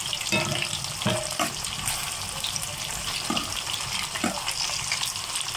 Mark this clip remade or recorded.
recorded